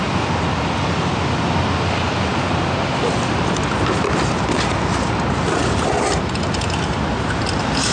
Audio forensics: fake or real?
real